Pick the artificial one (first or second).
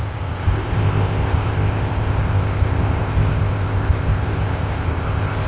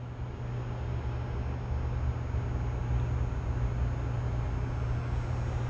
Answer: first